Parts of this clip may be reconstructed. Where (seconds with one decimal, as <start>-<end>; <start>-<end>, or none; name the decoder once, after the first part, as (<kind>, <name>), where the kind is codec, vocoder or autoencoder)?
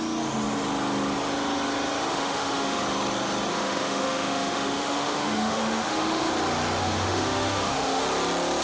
2.1-2.8 (autoencoder, DAC-VAE); 3.5-6.3; 6.8-8.0